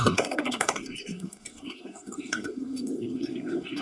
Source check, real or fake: fake